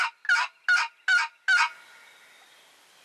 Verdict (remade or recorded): recorded